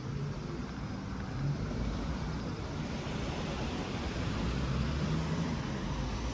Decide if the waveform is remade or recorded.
recorded